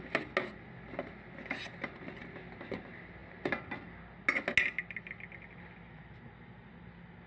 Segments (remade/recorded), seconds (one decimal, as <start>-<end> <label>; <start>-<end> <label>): 0.0-7.3 recorded